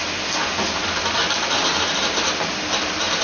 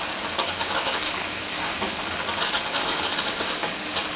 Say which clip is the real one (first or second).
first